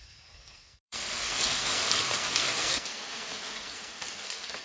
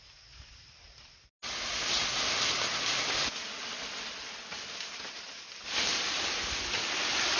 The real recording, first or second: second